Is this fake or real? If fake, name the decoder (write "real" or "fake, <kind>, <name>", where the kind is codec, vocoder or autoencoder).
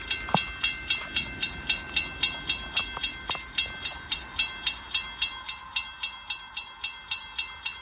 real